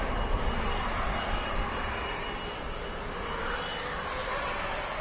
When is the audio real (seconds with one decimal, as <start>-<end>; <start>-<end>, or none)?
0.7-2.9; 3.7-4.3